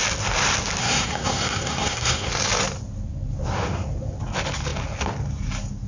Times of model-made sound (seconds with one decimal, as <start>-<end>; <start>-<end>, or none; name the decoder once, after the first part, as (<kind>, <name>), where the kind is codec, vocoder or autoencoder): 0.8-2.3 (codec, SNAC)